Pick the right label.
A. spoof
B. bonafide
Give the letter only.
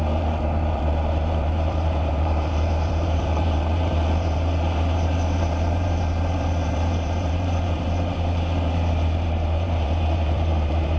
A